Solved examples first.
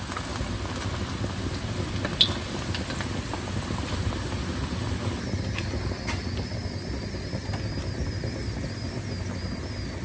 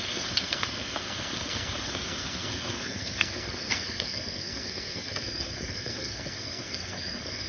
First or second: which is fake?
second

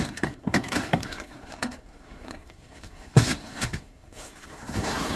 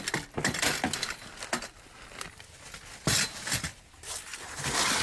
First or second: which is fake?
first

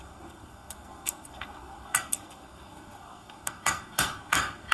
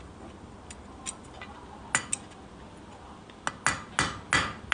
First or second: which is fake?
first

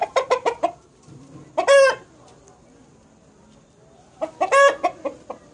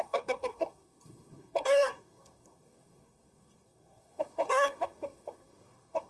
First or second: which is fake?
second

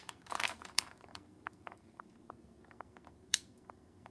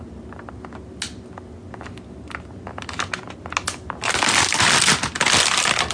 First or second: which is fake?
first